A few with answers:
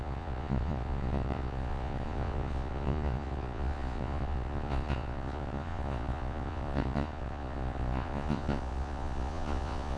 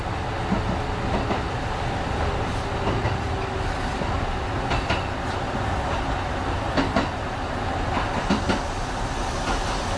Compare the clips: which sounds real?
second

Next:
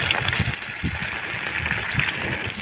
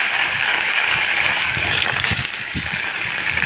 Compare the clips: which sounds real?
first